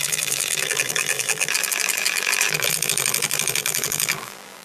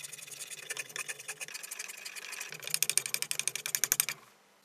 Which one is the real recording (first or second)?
second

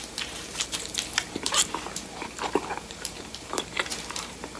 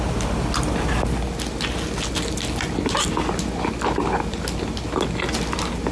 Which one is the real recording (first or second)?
second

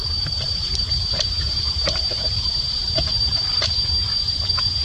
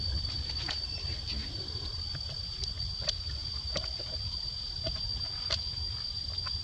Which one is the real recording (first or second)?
second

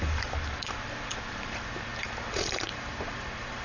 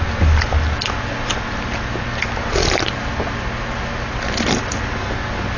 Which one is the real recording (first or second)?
second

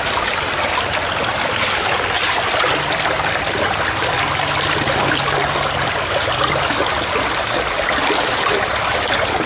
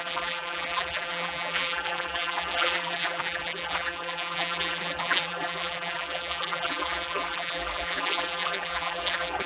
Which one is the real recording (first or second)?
first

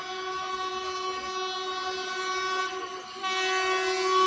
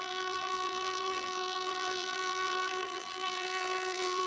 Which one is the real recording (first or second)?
first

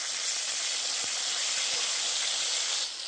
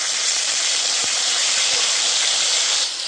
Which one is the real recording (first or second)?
first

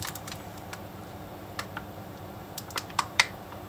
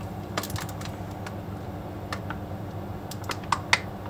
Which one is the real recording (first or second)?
second